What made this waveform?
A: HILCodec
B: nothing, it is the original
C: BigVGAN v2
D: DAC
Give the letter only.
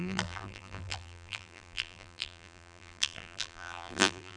C